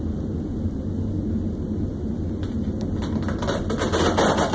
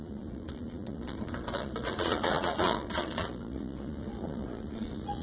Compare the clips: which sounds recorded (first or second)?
first